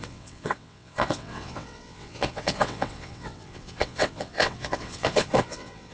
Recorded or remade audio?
remade